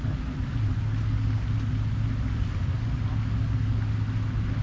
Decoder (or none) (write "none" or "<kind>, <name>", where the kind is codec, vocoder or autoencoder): none